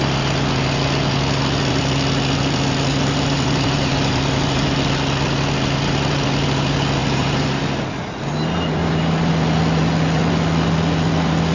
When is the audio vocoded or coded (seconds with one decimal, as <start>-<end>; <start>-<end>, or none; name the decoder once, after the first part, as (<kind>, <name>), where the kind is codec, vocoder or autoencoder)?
2.9-4.7 (vocoder, BigVGAN v2); 7.0-7.6; 8.8-9.3